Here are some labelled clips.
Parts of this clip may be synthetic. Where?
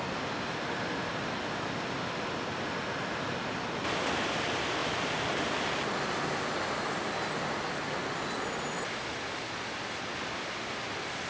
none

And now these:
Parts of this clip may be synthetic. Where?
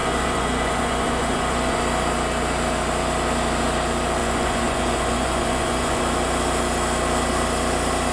0.0-1.8 (vocoder, Vocos); 4.2-6.0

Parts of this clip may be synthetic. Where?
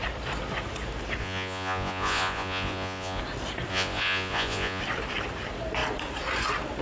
1.2-3.2 (vocoder, Vocos); 3.7-4.8